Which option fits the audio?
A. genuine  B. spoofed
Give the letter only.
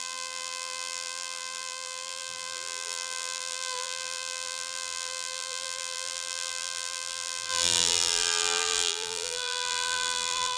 B